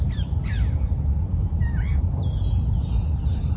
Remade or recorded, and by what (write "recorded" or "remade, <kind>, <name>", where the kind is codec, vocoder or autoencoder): recorded